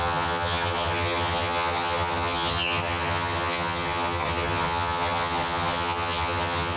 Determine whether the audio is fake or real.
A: fake